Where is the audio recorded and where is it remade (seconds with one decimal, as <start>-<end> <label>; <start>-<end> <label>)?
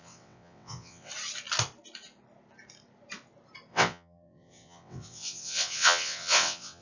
0.0-1.1 remade; 1.1-3.7 recorded; 3.7-6.8 remade